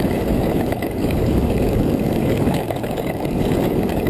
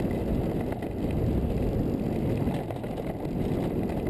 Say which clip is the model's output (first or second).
first